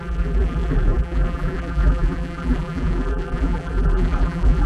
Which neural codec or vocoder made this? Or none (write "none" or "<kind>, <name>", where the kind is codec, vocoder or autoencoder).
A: vocoder, BigVGAN v2